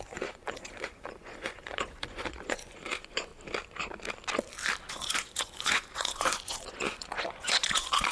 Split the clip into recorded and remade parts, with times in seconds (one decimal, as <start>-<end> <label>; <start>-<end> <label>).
0.0-3.3 remade; 3.3-4.9 recorded; 4.9-8.1 remade